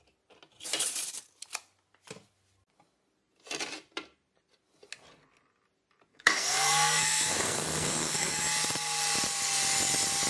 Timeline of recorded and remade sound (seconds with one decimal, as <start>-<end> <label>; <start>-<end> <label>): 0.0-6.1 recorded; 6.1-8.4 remade; 8.4-10.3 recorded